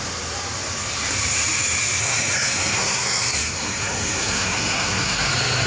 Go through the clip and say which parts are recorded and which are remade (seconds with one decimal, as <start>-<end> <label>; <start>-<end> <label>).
0.0-2.0 recorded; 2.0-5.3 remade; 5.3-5.7 recorded

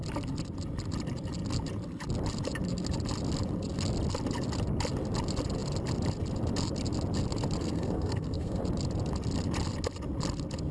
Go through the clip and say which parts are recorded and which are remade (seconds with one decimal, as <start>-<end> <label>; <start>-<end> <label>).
0.0-7.6 recorded; 7.6-8.6 remade; 8.6-10.7 recorded

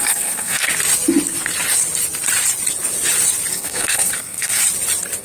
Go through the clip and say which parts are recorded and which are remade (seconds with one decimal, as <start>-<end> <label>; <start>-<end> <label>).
0.0-0.7 remade; 0.7-3.5 recorded; 3.5-4.6 remade; 4.6-5.2 recorded